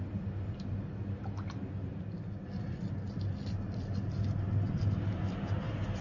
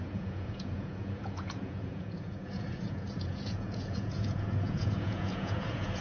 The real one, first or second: first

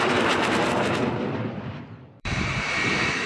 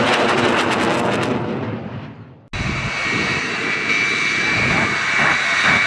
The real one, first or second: second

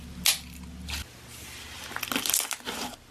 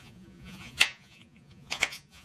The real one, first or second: first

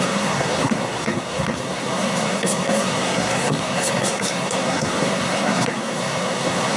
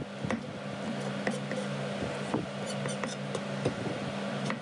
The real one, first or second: second